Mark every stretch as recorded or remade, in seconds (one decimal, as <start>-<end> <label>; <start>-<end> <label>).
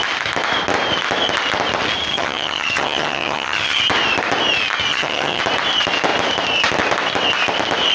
0.0-2.1 recorded; 2.1-3.8 remade; 3.8-4.9 recorded; 4.9-5.4 remade; 5.4-7.9 recorded